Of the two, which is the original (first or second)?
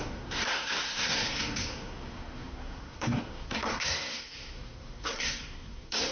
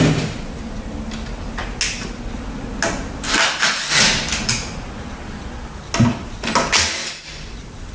second